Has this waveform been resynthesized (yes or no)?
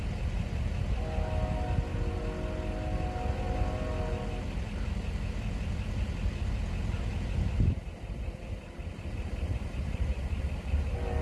no